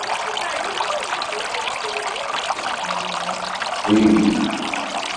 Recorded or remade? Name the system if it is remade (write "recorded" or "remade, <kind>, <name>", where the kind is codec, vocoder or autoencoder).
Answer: recorded